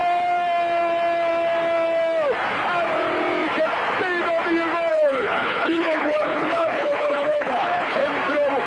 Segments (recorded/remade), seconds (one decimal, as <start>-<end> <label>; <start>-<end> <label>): 0.0-4.9 recorded; 4.9-8.0 remade; 8.0-8.7 recorded